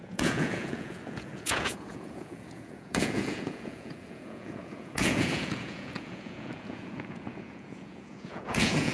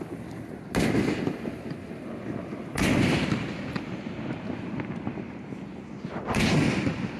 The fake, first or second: first